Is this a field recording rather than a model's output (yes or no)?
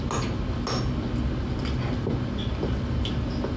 yes